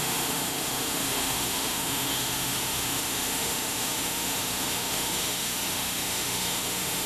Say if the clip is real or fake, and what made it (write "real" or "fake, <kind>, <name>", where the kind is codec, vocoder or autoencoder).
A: fake, autoencoder, DAC-VAE